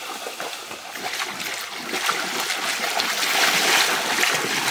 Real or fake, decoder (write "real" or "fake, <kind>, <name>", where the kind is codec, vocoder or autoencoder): real